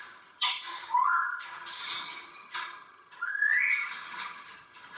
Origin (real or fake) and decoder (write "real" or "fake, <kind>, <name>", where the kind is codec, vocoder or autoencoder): fake, vocoder, HiFi-GAN